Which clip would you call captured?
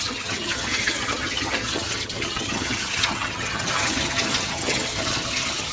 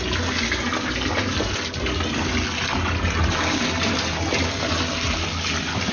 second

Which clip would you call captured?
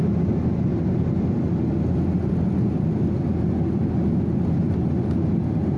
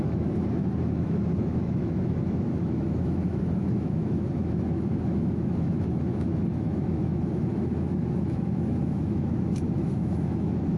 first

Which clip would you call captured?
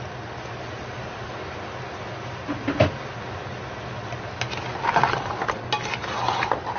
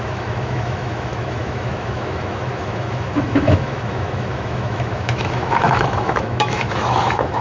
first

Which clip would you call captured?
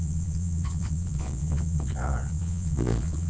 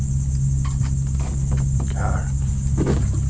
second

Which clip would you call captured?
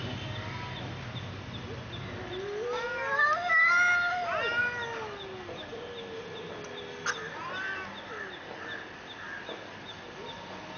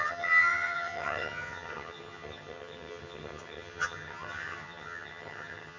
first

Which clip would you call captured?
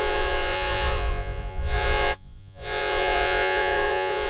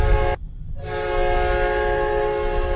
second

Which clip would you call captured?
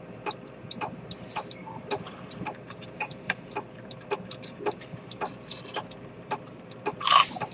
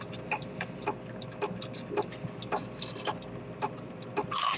second